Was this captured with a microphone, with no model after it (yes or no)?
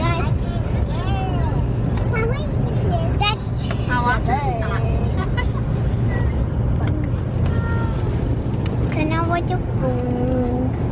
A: yes